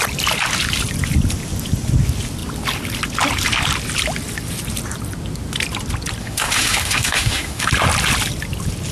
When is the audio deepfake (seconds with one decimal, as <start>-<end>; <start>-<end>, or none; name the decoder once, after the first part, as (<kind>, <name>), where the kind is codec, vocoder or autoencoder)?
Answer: 6.2-7.7 (autoencoder, DAC-VAE)